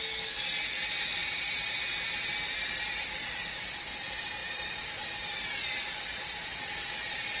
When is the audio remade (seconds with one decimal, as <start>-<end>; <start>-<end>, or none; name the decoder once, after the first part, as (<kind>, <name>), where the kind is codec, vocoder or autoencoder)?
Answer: 1.2-1.8 (vocoder, BigVGAN v2); 4.4-6.2